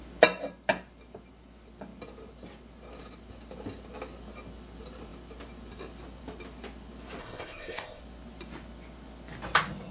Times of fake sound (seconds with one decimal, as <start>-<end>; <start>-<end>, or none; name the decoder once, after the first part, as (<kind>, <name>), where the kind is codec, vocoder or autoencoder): 7.2-8.0 (codec, ZipCodec)